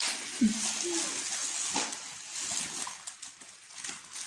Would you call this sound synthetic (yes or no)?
no